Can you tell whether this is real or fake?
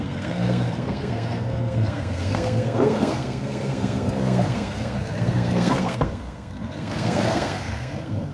fake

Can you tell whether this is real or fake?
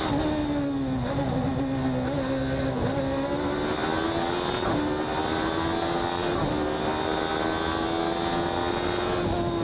real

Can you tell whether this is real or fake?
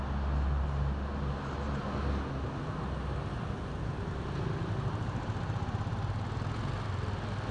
real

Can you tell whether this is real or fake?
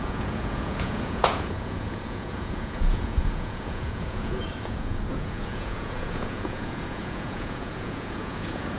fake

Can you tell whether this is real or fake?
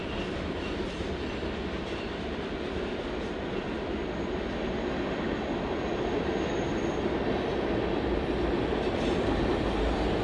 real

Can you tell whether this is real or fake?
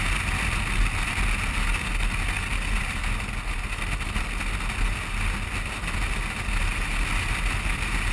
real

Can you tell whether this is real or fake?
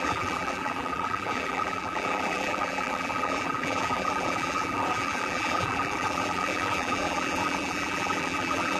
fake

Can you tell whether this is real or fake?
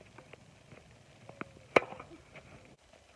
real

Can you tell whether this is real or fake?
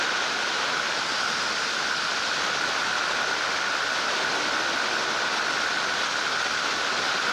real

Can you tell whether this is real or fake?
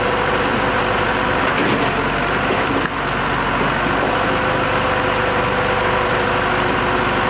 real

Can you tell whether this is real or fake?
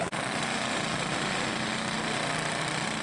real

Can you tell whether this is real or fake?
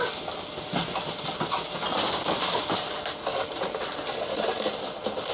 real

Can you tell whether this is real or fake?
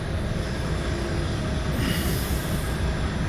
real